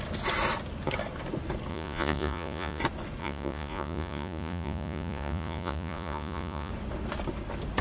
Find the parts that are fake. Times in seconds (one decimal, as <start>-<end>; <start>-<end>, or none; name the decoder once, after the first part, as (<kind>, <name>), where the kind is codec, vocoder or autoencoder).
1.7-2.8 (vocoder, Vocos); 3.2-6.7